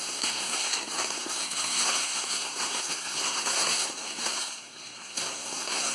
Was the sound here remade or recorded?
remade